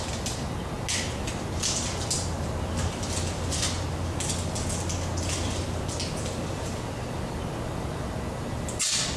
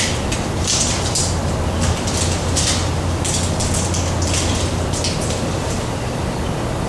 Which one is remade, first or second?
second